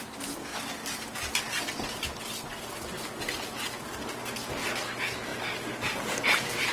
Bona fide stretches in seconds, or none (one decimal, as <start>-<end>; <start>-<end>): 0.0-6.7